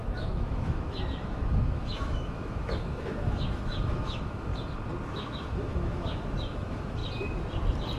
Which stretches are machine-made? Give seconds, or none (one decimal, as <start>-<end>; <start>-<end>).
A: 0.0-4.5; 5.1-7.0